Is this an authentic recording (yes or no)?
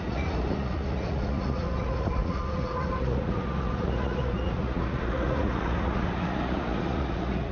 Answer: no